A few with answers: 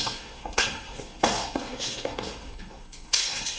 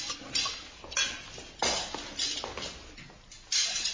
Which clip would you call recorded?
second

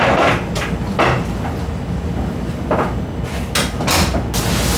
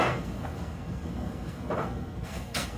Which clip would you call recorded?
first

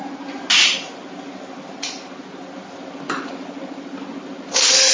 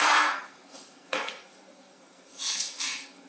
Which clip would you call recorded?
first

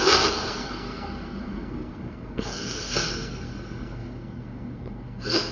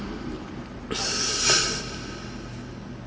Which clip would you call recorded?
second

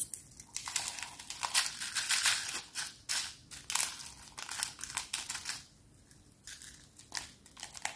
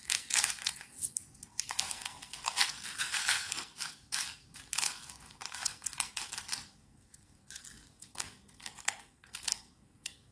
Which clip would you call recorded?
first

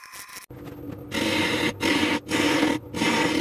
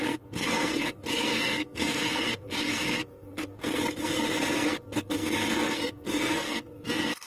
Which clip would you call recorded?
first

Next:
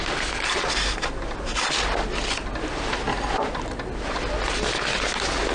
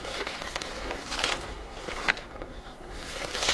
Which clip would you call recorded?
first